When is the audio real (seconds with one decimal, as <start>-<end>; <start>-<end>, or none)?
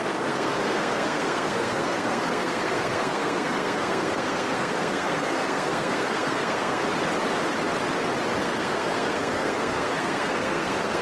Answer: 6.8-8.4